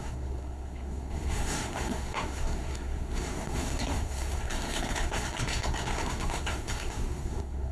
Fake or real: fake